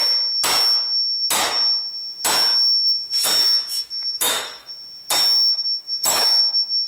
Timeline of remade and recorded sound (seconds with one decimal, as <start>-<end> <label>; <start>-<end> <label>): 0.0-3.4 recorded; 3.4-4.7 remade; 4.7-5.9 recorded; 5.9-6.4 remade; 6.4-6.9 recorded